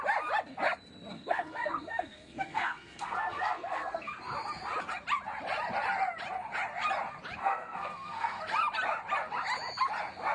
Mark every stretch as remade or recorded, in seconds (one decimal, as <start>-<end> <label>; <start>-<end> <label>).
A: 0.0-1.1 recorded; 1.1-4.1 remade; 4.1-7.4 recorded; 7.4-8.4 remade; 8.4-10.3 recorded